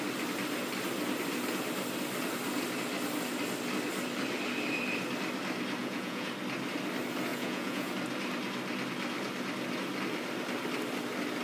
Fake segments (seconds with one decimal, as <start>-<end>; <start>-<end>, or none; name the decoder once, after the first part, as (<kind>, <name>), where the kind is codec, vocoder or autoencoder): 5.8-6.3 (vocoder, Vocos); 7.3-7.9